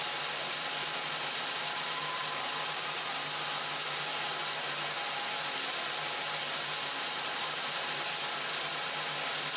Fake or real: real